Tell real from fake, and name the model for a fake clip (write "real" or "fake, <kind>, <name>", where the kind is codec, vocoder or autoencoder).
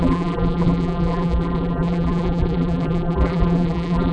fake, vocoder, BigVGAN v2